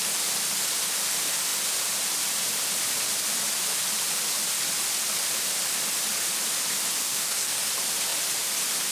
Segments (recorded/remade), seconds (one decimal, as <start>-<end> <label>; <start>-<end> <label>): 0.0-7.0 recorded; 7.0-7.6 remade; 7.6-8.9 recorded